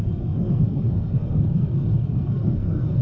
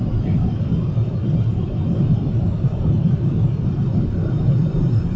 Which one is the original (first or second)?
second